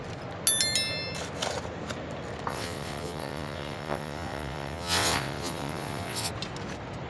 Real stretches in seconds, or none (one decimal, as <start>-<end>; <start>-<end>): 0.0-2.5; 6.3-7.1